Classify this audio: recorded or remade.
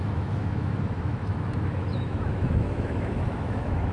remade